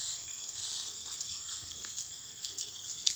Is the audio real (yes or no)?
no